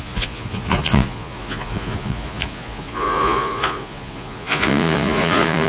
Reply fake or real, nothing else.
fake